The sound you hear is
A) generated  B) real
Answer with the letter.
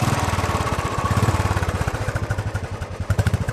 A